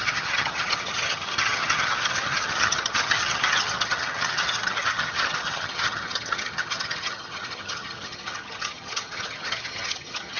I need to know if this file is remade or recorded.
remade